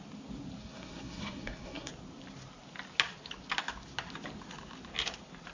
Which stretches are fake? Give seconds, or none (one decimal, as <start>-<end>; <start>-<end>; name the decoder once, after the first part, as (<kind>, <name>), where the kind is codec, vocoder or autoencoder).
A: 0.6-1.9 (codec, SNAC)